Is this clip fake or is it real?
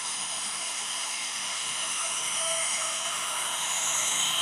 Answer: fake